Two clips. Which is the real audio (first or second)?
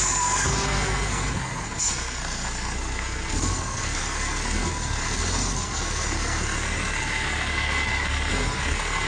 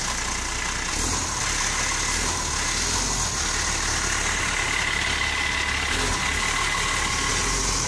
second